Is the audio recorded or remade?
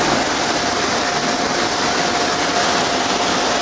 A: recorded